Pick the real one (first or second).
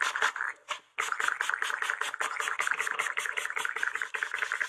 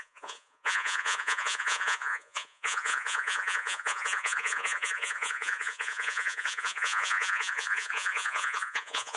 first